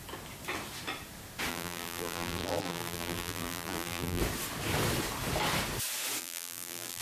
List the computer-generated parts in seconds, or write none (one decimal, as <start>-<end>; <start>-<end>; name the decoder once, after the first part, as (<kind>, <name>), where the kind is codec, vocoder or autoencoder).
1.5-4.2 (vocoder, BigVGAN v2); 6.2-7.0

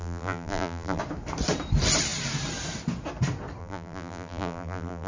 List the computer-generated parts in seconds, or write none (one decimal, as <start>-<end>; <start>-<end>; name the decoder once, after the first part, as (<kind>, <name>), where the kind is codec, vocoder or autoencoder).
0.0-1.0 (vocoder, BigVGAN v2); 3.6-5.1